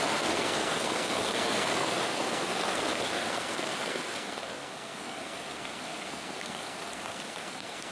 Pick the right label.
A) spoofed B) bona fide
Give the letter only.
A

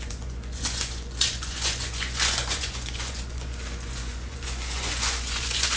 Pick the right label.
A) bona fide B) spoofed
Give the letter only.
B